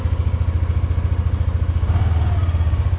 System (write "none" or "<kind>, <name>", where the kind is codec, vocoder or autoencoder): none